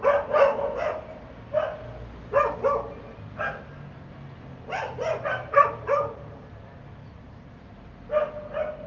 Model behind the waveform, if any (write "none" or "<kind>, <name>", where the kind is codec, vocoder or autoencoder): none